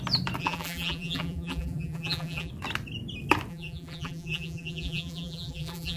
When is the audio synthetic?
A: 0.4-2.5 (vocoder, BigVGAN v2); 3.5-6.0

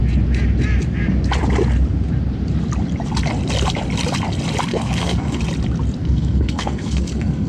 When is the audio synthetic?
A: 4.7-5.4 (codec, SNAC); 6.0-7.5

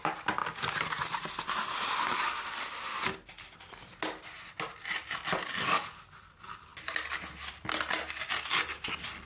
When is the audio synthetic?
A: none

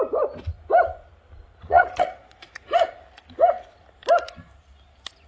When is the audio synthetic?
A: 1.6-2.7 (vocoder, Vocos)

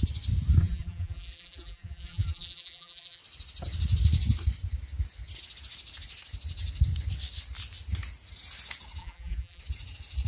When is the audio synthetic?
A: 0.6-3.2 (vocoder, BigVGAN v2); 9.0-9.6